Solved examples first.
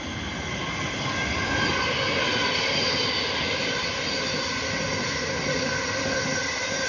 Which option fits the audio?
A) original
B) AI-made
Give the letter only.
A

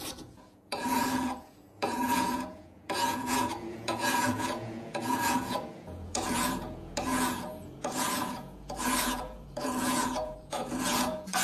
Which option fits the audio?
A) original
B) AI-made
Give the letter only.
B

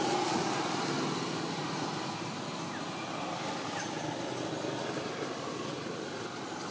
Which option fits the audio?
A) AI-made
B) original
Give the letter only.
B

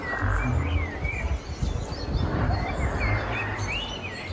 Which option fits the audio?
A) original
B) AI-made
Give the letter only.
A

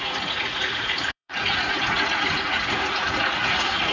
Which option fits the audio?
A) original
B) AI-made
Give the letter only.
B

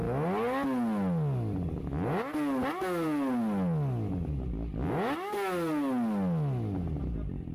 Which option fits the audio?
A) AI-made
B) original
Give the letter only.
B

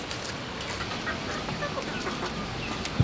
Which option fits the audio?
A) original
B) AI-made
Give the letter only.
A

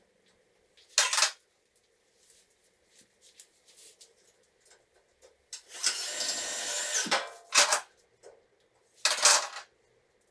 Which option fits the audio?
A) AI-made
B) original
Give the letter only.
B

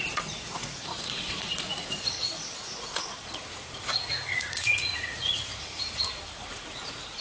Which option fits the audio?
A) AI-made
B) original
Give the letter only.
A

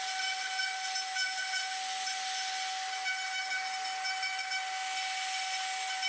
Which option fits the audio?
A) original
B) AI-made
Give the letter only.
A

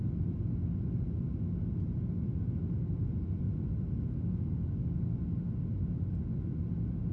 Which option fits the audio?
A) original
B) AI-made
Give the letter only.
A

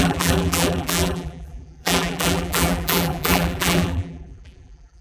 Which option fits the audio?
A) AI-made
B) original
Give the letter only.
A